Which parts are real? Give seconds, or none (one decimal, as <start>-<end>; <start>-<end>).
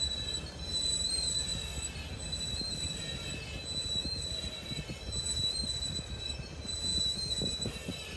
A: 1.7-4.3